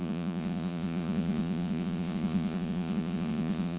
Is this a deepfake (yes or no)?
yes